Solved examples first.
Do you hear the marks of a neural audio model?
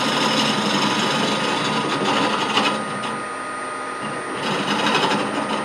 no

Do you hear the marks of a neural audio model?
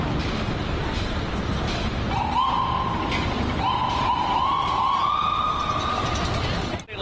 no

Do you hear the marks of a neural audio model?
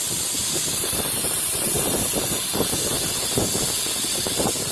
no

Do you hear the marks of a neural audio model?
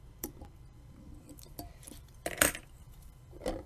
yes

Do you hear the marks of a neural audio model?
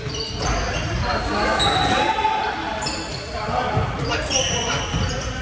no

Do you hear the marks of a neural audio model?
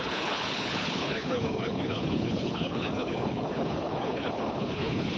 yes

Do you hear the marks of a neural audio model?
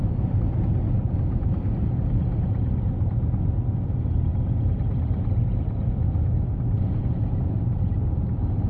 no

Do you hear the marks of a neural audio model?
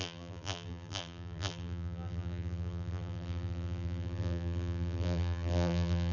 yes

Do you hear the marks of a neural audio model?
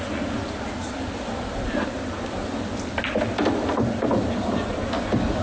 no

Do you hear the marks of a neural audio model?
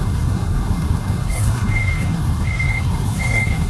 yes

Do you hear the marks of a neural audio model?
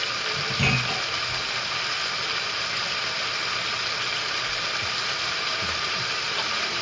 no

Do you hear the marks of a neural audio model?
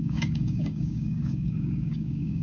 yes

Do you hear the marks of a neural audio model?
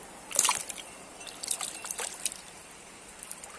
yes